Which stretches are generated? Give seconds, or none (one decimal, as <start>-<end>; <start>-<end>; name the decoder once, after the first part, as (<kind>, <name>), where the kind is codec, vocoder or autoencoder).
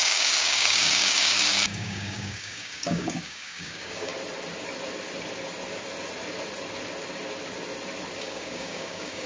0.0-4.1 (codec, DAC); 8.2-9.3